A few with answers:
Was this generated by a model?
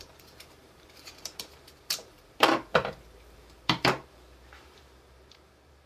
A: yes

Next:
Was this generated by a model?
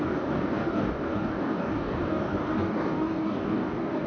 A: yes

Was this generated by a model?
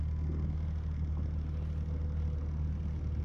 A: no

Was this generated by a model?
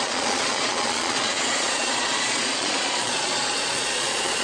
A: yes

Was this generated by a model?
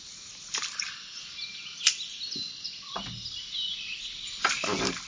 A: no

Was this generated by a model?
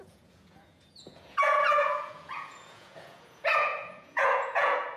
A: yes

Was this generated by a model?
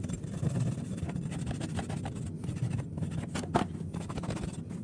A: no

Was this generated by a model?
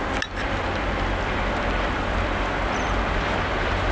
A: no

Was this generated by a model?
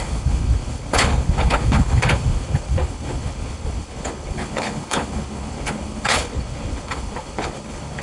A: yes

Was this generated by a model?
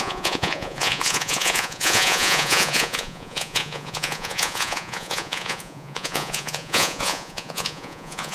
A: yes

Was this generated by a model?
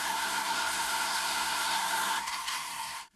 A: yes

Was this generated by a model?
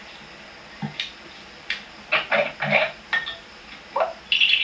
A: no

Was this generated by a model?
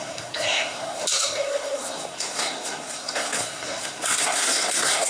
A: yes